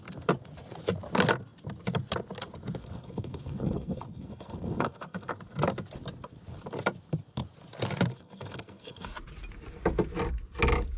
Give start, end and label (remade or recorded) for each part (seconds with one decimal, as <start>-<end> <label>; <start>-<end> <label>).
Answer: 0.0-2.8 recorded; 2.8-5.3 remade; 5.3-8.1 recorded; 8.1-9.1 remade; 9.1-11.0 recorded

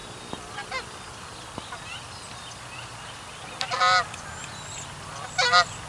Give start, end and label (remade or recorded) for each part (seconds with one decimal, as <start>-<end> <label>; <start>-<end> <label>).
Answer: 0.0-5.9 recorded